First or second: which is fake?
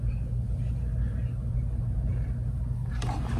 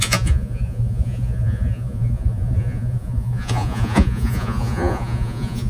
second